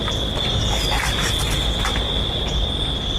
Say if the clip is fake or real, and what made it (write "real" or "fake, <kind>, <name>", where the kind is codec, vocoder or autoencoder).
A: real